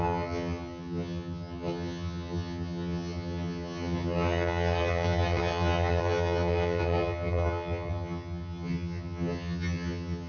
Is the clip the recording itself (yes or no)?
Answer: no